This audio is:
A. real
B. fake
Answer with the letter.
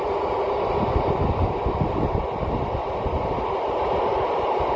A